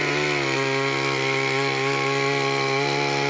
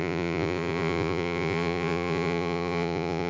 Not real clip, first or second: second